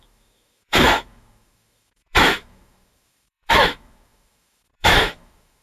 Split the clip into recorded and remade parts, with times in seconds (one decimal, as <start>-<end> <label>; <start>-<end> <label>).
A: 0.0-5.6 remade